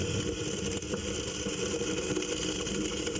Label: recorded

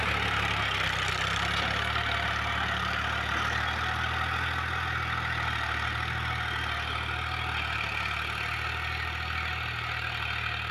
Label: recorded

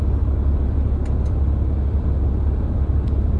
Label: recorded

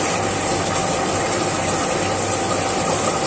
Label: recorded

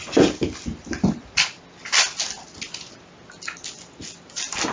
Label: recorded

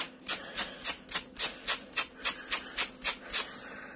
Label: recorded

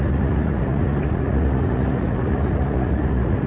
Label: remade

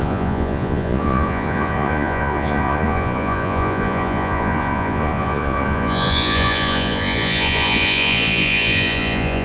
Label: remade